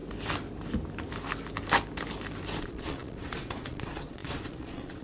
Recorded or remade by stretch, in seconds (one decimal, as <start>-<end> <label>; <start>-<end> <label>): 0.0-2.6 recorded; 2.6-5.0 remade